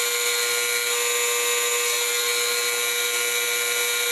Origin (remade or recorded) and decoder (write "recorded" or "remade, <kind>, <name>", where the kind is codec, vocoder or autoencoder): recorded